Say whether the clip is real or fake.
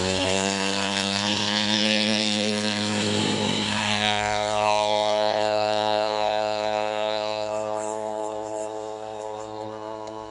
fake